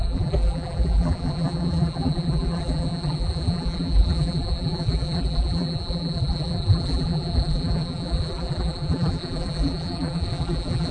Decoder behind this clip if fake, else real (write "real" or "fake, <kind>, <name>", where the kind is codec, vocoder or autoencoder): fake, vocoder, BigVGAN v2